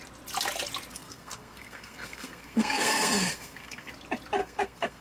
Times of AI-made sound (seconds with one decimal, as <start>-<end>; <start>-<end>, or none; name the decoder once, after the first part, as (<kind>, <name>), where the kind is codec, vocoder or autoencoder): 0.9-3.9 (codec, SNAC); 4.4-5.0